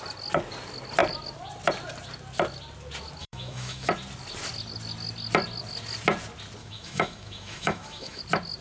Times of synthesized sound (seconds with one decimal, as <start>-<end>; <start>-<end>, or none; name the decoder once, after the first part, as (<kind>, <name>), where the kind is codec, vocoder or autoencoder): 3.2-3.9 (autoencoder, DAC-VAE); 6.6-8.2